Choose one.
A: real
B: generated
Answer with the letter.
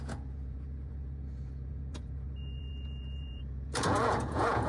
B